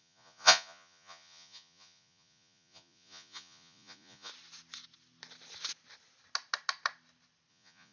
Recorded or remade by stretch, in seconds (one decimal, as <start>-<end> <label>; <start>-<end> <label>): 0.0-4.3 remade; 4.3-7.5 recorded; 7.5-7.9 remade